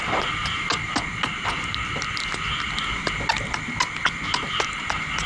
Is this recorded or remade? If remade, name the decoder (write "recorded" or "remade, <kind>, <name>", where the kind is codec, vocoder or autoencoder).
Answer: recorded